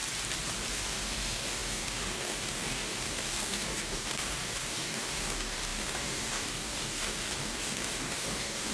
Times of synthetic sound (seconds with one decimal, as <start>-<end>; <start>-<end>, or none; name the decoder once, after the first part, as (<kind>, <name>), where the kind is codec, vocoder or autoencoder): 0.7-8.7 (codec, DAC)